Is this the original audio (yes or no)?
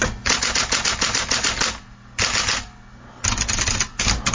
yes